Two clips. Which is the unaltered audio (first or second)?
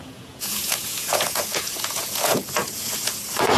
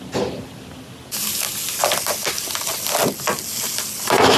second